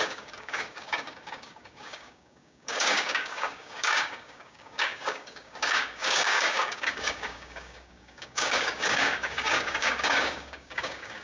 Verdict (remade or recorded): remade